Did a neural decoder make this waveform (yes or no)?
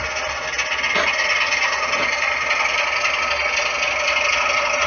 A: no